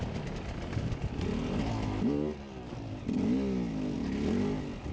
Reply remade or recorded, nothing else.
recorded